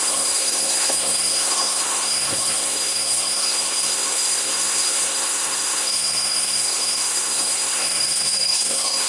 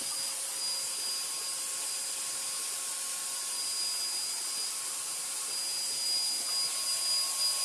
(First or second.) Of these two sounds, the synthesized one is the first